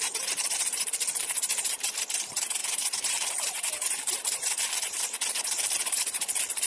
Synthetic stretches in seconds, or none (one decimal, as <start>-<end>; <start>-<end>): 0.0-6.7

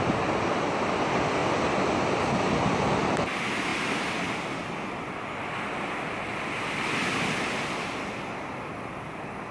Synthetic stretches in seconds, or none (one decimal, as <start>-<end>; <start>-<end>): none

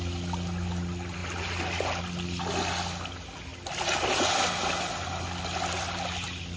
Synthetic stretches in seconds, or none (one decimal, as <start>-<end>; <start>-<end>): none

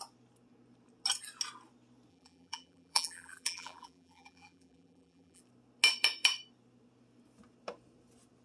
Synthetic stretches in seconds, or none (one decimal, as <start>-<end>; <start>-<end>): 2.1-5.4

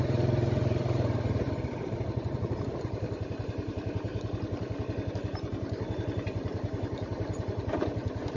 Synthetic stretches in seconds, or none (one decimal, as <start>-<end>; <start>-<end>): 0.0-4.1; 5.1-8.4

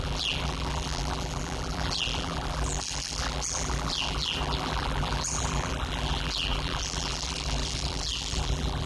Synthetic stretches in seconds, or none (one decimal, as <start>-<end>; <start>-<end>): 0.0-8.9

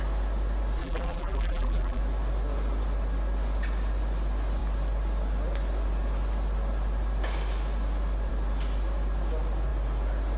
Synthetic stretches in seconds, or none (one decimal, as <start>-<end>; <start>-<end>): 0.8-2.0